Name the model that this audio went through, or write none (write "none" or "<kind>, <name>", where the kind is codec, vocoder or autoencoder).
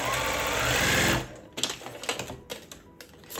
none